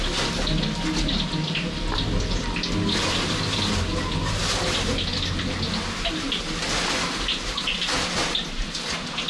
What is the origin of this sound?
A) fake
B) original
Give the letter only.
B